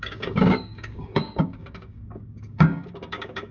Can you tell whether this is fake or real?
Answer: fake